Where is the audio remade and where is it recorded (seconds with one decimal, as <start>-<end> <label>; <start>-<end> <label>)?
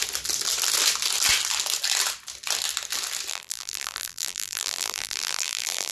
0.0-3.3 recorded; 3.3-5.9 remade